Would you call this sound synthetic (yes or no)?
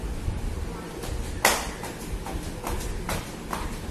no